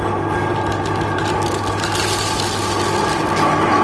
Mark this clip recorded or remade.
recorded